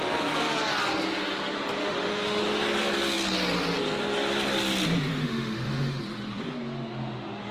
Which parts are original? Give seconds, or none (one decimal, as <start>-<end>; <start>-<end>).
0.0-1.8; 2.4-5.1; 6.0-7.5